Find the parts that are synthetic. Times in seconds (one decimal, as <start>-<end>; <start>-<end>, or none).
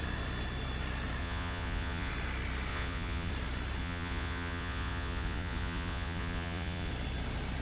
1.2-2.1; 2.7-3.3; 3.8-6.9